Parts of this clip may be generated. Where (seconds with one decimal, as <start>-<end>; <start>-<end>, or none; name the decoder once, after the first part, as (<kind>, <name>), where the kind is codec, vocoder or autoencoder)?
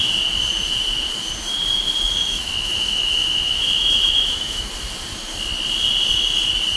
2.2-4.7 (autoencoder, DAC-VAE)